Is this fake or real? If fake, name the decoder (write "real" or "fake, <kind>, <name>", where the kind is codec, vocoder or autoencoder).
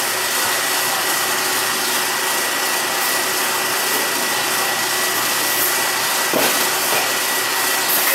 real